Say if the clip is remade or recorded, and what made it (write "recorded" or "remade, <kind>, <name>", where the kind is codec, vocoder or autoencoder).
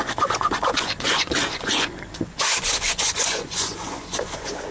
remade, vocoder, Vocos